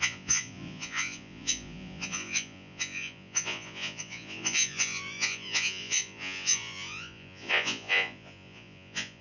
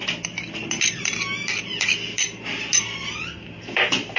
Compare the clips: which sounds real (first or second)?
second